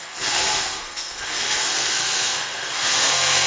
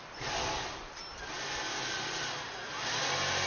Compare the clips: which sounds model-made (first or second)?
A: first